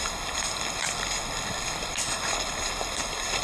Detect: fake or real real